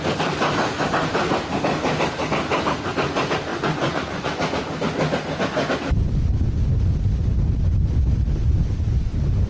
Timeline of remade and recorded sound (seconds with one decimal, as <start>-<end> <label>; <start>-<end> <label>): 0.0-3.5 recorded; 3.5-4.4 remade; 4.4-9.5 recorded